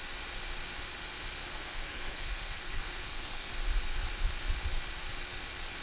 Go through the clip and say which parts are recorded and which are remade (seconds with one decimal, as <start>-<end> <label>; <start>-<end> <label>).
0.0-1.4 recorded; 1.4-3.5 remade; 3.5-5.8 recorded